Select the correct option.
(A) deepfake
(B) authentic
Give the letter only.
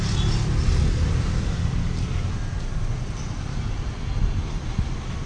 B